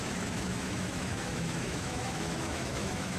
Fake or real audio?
fake